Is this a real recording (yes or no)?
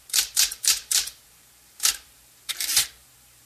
no